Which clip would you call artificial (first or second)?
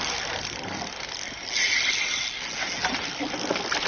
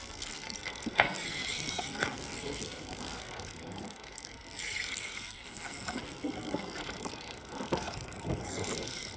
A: second